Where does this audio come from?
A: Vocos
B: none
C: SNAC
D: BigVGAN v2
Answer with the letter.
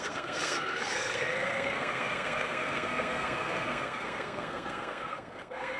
C